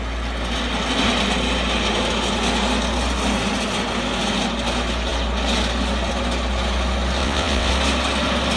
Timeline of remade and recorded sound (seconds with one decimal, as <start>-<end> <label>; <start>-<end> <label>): 0.0-7.2 recorded; 7.2-7.7 remade; 7.7-8.6 recorded